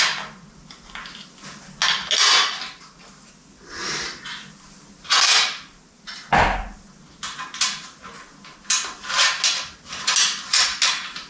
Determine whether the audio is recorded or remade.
recorded